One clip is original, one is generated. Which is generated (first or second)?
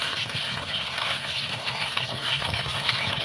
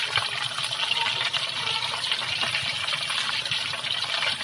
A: first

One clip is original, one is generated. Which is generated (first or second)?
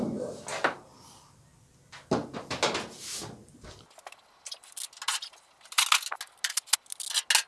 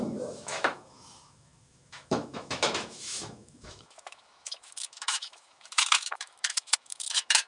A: second